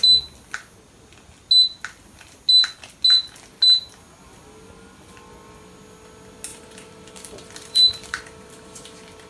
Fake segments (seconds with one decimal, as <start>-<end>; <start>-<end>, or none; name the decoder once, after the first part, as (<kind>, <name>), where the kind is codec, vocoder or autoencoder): 6.5-9.3 (vocoder, BigVGAN v2)